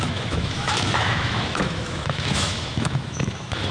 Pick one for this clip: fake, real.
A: fake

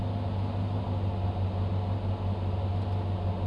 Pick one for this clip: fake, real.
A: real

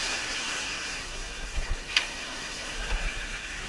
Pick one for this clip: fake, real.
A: fake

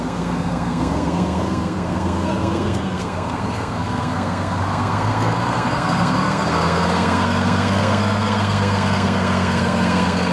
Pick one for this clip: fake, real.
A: fake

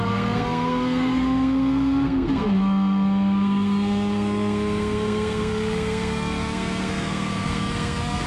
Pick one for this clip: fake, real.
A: fake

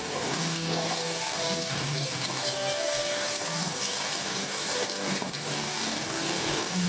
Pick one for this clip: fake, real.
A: fake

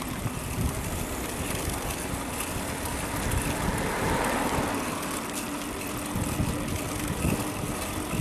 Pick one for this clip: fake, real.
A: real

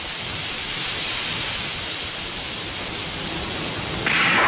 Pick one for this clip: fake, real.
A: real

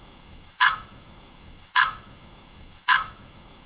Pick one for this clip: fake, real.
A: fake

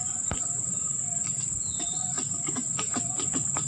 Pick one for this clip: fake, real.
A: fake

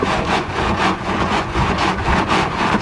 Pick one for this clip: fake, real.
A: fake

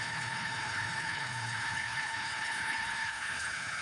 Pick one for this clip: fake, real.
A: fake